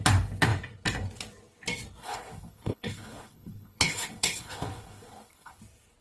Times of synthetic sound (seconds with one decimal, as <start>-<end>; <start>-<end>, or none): 2.0-5.6